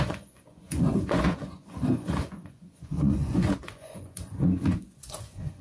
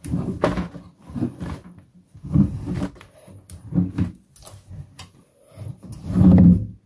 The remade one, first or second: first